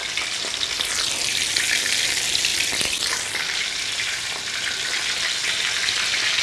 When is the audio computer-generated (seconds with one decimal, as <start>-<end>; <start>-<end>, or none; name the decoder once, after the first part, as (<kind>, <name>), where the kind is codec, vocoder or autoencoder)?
2.5-5.4 (vocoder, BigVGAN v2)